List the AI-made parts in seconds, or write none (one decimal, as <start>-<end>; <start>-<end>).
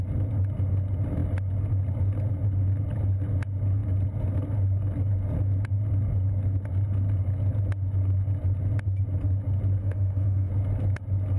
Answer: 9.8-10.5